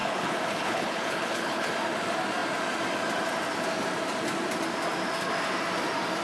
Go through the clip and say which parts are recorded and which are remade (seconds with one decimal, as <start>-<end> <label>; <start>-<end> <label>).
0.0-1.7 remade; 1.7-6.2 recorded